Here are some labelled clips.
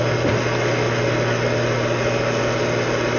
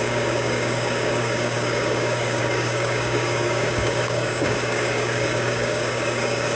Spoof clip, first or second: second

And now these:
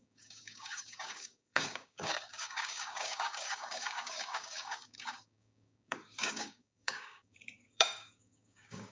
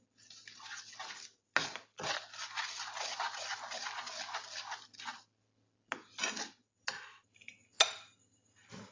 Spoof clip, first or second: first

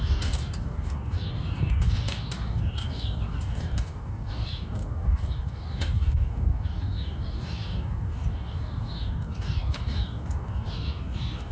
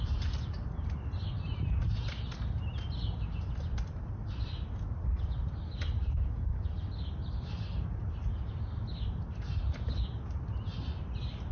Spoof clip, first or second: first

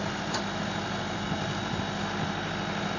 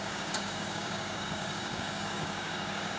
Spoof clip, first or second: second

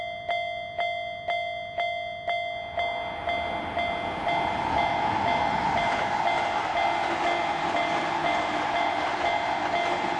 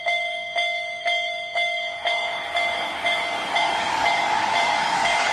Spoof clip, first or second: second